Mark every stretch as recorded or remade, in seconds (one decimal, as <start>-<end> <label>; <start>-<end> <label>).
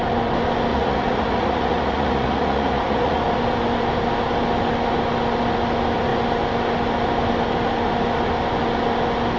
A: 0.0-0.7 recorded; 0.7-3.2 remade; 3.2-9.4 recorded